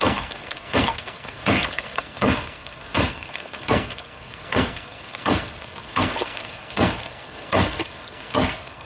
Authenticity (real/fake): fake